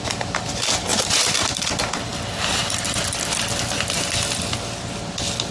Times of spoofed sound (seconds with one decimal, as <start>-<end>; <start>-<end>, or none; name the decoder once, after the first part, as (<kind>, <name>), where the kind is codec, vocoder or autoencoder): 0.9-1.7 (vocoder, BigVGAN v2)